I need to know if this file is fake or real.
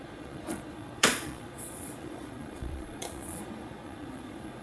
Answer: fake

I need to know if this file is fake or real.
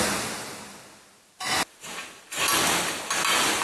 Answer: real